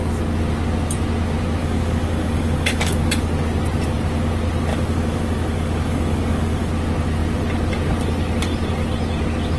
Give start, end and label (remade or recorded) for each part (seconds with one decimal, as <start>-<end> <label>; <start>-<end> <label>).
0.0-1.6 recorded; 1.6-3.3 remade; 3.3-4.7 recorded; 4.7-6.7 remade; 6.7-9.6 recorded